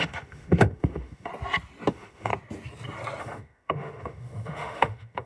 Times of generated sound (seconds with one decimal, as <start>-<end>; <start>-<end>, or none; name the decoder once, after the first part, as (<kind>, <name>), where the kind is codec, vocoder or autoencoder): 0.0-1.3 (autoencoder, DAC-VAE); 1.9-2.3; 3.2-5.3

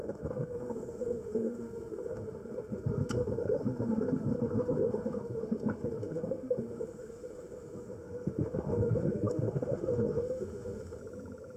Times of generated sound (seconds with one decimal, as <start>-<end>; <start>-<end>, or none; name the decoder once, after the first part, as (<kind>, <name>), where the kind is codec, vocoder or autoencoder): 0.0-11.0 (autoencoder, DAC-VAE)

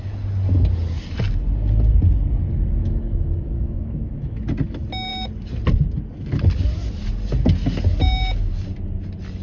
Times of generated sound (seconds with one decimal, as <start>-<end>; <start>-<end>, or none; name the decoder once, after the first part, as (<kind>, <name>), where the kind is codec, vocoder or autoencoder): 2.8-4.4 (autoencoder, DAC-VAE)

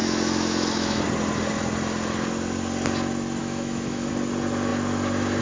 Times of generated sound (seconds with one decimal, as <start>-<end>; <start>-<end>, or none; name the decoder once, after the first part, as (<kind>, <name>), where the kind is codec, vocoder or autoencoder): 0.0-1.0 (autoencoder, DAC-VAE); 3.4-4.1

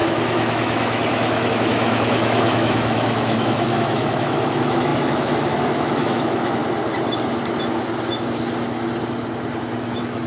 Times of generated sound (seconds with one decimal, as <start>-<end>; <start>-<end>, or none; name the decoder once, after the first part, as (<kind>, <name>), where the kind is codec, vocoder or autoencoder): 0.0-6.6 (autoencoder, DAC-VAE); 9.6-10.3

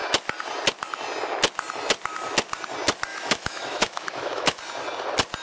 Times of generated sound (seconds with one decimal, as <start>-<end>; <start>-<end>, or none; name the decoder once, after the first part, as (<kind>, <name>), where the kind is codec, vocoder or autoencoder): 3.1-4.6 (autoencoder, DAC-VAE)

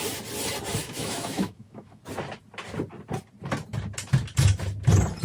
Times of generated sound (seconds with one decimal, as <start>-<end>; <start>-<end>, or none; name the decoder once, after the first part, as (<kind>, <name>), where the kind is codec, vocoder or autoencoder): 0.8-2.0 (autoencoder, DAC-VAE)